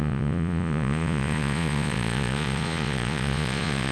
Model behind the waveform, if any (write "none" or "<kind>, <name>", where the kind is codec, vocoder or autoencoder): vocoder, Vocos